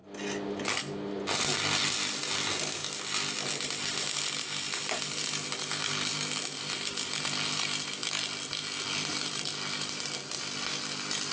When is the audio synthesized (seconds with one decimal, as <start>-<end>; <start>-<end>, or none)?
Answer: none